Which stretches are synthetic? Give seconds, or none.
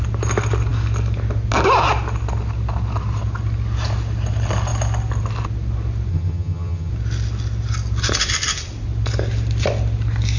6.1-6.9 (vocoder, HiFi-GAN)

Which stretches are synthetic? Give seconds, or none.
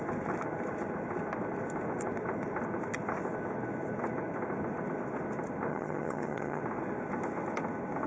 5.7-6.6 (vocoder, HiFi-GAN)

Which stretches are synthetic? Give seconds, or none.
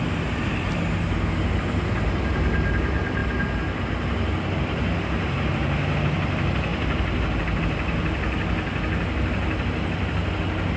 none